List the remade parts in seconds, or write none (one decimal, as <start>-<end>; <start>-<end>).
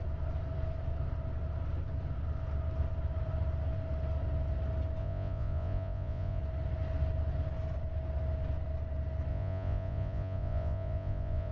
5.0-6.4; 9.3-11.5